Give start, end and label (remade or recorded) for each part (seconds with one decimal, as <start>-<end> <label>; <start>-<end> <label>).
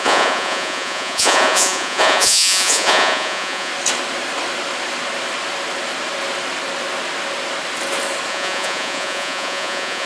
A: 0.0-3.7 remade; 3.7-8.3 recorded; 8.3-10.1 remade